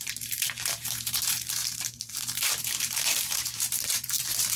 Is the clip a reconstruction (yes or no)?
yes